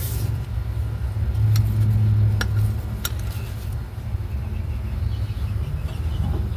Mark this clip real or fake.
real